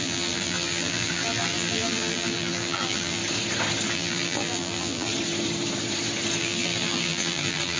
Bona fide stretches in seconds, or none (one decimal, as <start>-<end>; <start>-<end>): 3.2-3.9; 5.1-6.4